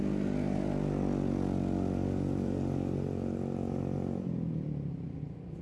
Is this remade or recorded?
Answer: recorded